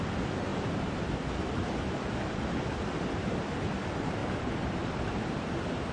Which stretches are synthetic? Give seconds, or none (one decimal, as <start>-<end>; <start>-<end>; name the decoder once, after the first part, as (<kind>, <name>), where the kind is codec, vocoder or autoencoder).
none

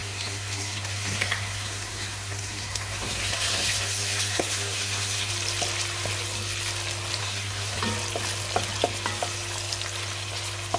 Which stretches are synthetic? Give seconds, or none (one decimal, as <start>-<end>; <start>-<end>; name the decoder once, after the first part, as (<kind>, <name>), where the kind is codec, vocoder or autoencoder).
0.0-5.3 (codec, SNAC); 7.2-7.8

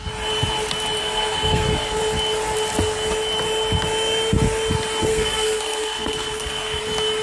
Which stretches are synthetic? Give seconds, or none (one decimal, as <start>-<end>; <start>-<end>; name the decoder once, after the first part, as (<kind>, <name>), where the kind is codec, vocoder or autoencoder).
1.0-2.0 (codec, SNAC); 5.1-6.8

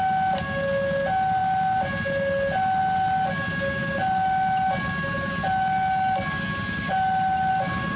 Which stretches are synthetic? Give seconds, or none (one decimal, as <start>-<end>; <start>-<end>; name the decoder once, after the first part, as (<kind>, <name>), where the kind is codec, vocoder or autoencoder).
none

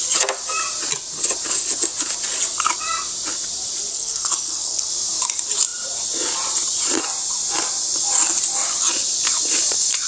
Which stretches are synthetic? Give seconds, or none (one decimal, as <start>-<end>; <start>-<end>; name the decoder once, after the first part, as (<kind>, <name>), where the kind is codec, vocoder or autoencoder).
3.9-4.9 (codec, SNAC)

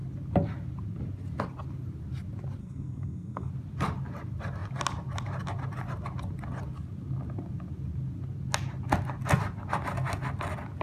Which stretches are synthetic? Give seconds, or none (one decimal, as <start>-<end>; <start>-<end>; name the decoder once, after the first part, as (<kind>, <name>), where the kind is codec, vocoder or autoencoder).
2.6-3.5 (codec, SNAC)

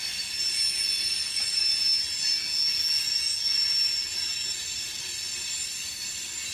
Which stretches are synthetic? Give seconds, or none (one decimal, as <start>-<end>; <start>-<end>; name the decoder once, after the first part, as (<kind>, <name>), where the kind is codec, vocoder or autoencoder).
none

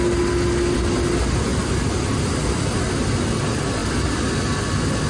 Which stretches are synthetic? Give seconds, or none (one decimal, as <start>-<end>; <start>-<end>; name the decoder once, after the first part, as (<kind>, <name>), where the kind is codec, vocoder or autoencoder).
none